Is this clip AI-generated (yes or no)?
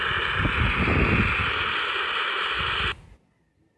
no